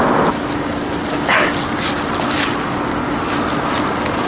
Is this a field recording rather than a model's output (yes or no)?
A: yes